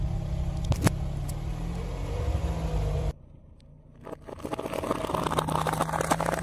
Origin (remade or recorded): recorded